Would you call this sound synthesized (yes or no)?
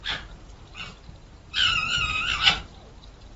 no